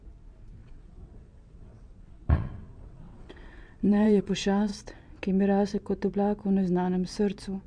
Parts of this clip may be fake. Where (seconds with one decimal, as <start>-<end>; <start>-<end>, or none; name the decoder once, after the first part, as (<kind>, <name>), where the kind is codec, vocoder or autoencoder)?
0.6-4.3 (vocoder, WaveNeXt)